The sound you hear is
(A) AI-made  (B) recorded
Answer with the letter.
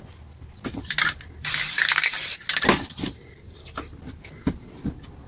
B